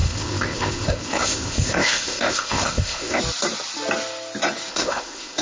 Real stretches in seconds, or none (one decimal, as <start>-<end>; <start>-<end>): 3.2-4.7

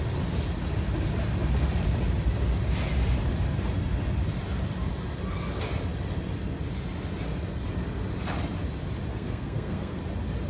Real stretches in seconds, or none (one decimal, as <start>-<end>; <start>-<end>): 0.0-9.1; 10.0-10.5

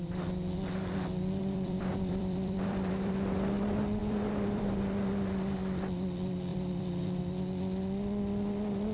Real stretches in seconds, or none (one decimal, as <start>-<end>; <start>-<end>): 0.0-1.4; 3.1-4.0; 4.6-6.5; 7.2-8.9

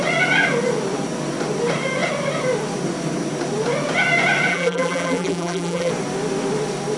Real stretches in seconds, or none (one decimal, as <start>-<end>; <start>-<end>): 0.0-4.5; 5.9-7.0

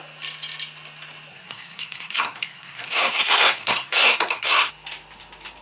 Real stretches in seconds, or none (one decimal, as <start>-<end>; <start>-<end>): 0.0-1.3; 4.7-5.6

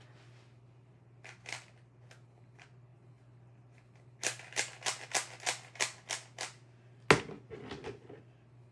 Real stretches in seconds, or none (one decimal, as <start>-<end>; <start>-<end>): 0.0-8.7